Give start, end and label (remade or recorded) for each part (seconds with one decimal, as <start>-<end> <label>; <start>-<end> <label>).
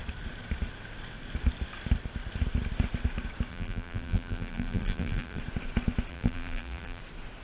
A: 0.0-3.5 recorded; 3.5-5.4 remade; 5.4-6.1 recorded; 6.1-7.0 remade; 7.0-7.4 recorded